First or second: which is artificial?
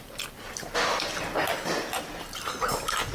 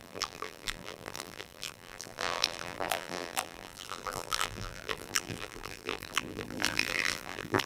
second